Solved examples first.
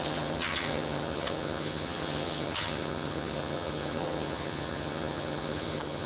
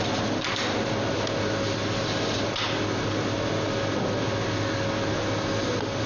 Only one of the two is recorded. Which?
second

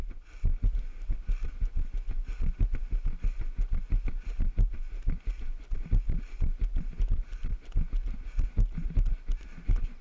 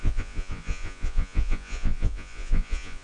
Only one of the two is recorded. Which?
first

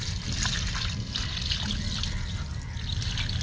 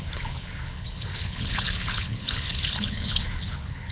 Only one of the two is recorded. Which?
first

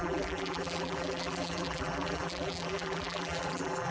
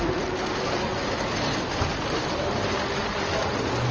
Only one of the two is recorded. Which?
second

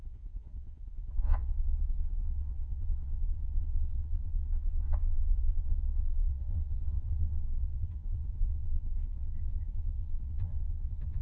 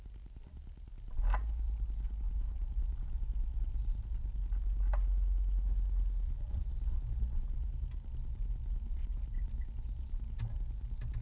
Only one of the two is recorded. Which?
second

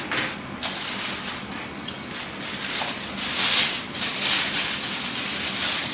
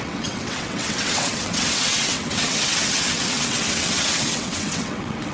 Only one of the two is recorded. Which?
first